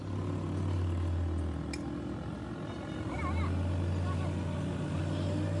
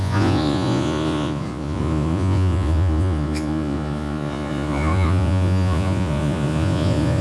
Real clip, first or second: first